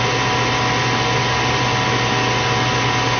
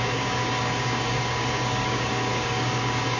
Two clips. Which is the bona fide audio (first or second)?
first